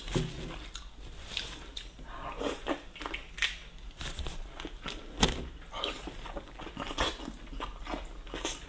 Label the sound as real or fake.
real